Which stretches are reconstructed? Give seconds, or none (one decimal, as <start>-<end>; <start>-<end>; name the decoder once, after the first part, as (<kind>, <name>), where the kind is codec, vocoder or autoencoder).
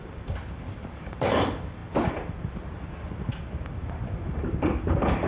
0.0-1.8 (vocoder, BigVGAN v2)